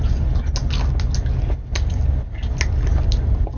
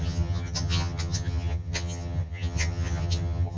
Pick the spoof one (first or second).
second